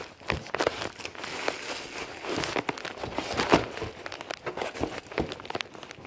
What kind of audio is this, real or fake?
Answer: real